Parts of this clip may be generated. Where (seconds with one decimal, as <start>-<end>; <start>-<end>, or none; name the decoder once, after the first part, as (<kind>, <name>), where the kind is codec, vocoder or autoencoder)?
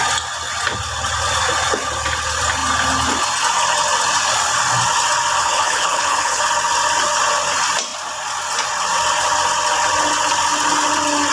5.4-6.4 (codec, HILCodec)